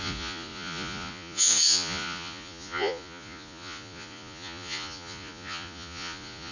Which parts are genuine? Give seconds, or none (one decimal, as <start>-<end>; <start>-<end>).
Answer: none